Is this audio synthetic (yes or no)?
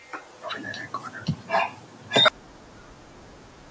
no